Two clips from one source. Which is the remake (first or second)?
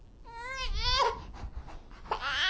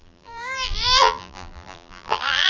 second